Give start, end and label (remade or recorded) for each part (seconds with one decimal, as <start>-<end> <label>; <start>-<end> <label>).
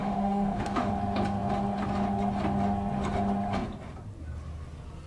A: 0.0-0.9 remade; 0.9-5.1 recorded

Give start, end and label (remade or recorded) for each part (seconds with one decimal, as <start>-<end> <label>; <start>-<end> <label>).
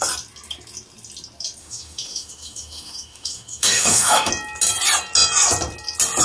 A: 0.0-1.6 recorded; 1.6-4.3 remade; 4.3-6.2 recorded